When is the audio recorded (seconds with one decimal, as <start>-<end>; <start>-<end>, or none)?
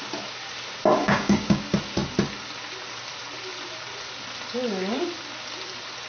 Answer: 0.0-1.0; 1.6-6.1